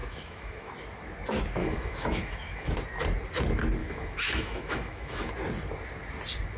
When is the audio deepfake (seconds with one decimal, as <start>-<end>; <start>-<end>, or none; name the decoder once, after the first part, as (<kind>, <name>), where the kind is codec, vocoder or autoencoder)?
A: 0.0-0.7 (autoencoder, DAC-VAE); 1.6-2.7; 3.8-5.3